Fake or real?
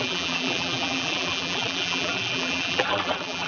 fake